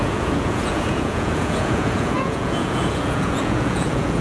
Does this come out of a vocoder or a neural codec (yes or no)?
yes